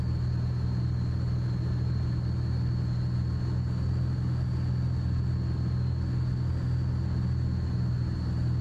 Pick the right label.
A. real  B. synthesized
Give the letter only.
A